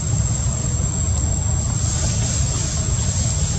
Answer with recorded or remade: recorded